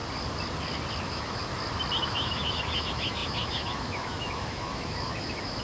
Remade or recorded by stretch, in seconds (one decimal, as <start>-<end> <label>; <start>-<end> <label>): 0.0-1.0 recorded; 1.0-1.5 remade; 1.5-2.0 recorded; 2.0-5.6 remade